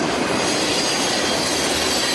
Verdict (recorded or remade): recorded